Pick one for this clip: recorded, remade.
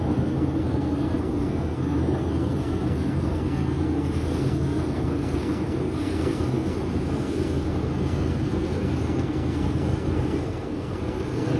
remade